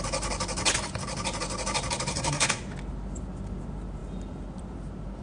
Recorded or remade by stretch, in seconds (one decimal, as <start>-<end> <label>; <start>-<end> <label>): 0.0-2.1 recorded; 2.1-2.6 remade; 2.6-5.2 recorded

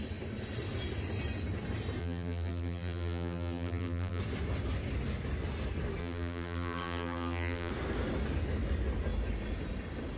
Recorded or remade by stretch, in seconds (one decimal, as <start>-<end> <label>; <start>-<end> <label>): 0.0-2.0 recorded; 2.0-4.2 remade; 4.2-6.0 recorded; 6.0-7.7 remade; 7.7-10.2 recorded

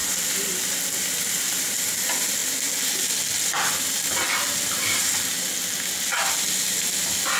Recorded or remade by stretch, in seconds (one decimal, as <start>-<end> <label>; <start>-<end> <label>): 0.0-1.9 remade; 1.9-6.1 recorded; 6.1-6.9 remade; 6.9-7.4 recorded

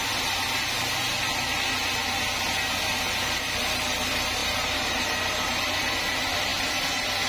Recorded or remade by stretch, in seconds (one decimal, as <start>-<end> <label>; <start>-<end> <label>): 0.0-4.4 recorded; 4.4-5.6 remade; 5.6-7.3 recorded

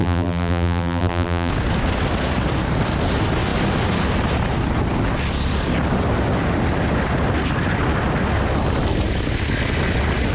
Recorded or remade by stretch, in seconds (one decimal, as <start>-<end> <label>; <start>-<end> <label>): 0.0-1.5 remade; 1.5-10.3 recorded

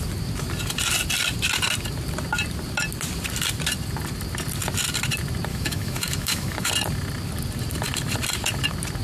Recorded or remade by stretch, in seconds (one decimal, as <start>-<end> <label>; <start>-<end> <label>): 0.0-5.5 recorded; 5.5-6.7 remade; 6.7-9.0 recorded

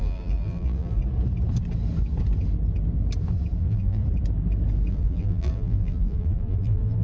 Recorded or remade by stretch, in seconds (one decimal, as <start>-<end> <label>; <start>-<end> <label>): 0.0-1.0 remade; 1.0-3.6 recorded; 3.6-4.0 remade; 4.0-4.9 recorded; 4.9-7.0 remade

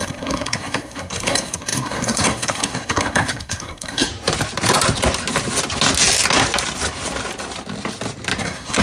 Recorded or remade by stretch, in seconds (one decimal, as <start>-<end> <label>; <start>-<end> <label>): 0.0-4.1 remade; 4.1-8.4 recorded; 8.4-8.8 remade